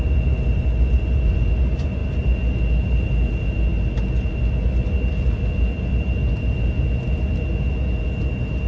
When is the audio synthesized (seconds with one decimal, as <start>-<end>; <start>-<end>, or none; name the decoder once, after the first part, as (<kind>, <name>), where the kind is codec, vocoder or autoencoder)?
none